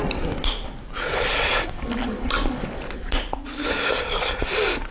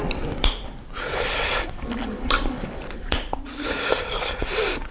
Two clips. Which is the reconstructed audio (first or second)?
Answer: second